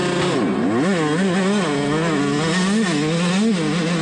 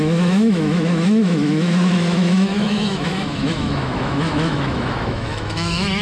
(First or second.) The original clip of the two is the first